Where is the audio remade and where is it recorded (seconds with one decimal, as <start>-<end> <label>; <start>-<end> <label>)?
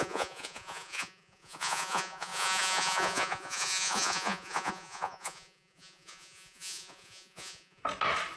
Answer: 0.0-7.8 remade; 7.8-8.4 recorded